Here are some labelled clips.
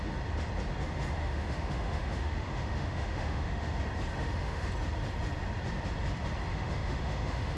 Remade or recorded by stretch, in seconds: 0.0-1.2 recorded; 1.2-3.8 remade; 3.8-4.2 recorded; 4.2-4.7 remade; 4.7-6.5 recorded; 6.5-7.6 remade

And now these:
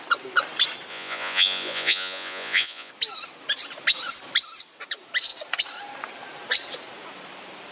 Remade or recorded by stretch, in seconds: 0.0-0.9 recorded; 0.9-2.9 remade; 2.9-7.7 recorded

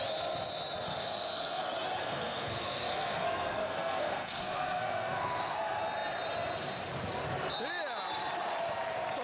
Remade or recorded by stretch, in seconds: 0.0-0.9 recorded; 0.9-1.6 remade; 1.6-2.0 recorded; 2.0-5.6 remade; 5.6-9.2 recorded

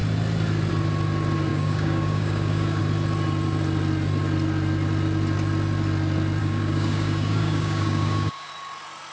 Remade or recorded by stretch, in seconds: 0.0-1.5 recorded; 1.5-2.8 remade; 2.8-6.4 recorded; 6.4-8.5 remade; 8.5-9.1 recorded

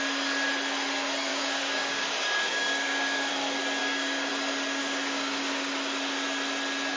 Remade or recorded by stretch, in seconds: 0.0-1.3 recorded; 1.3-3.3 remade; 3.3-3.8 recorded; 3.8-4.3 remade; 4.3-4.8 recorded; 4.8-5.7 remade; 5.7-7.0 recorded

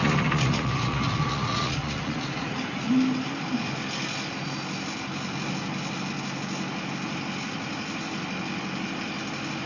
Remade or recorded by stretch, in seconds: 0.0-2.9 remade; 2.9-9.7 recorded

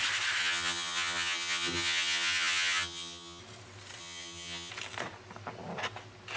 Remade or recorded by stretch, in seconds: 0.0-0.4 recorded; 0.4-3.4 remade; 3.4-4.0 recorded; 4.0-4.7 remade; 4.7-6.4 recorded